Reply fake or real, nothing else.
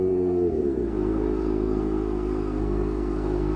fake